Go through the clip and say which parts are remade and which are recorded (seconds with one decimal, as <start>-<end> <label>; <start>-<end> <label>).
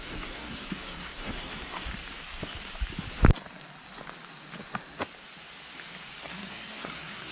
0.0-1.9 remade; 1.9-6.3 recorded; 6.3-7.3 remade